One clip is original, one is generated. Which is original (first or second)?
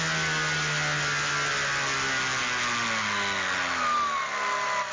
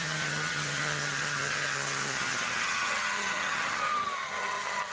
first